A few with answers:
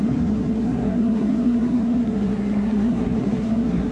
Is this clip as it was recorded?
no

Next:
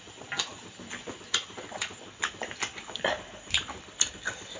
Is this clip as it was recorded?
yes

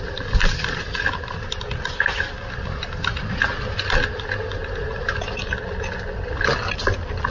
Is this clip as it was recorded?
yes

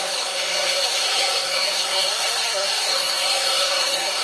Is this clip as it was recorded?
no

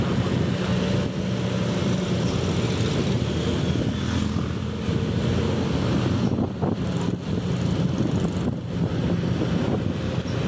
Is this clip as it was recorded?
yes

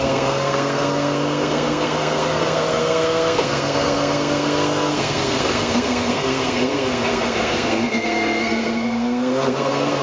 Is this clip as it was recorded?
no